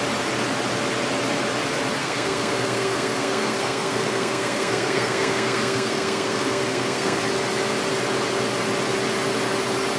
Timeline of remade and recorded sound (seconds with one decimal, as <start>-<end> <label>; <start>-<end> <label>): 0.0-2.0 recorded; 2.0-7.2 remade; 7.2-10.0 recorded